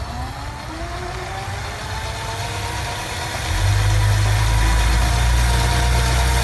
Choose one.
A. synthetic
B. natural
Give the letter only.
B